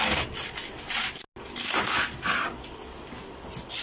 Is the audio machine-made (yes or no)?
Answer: no